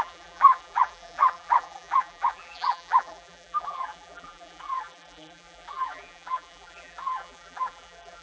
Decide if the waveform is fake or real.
fake